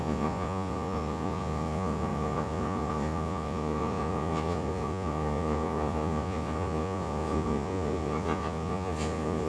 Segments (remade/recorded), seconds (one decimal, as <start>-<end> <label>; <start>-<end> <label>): 0.0-9.5 remade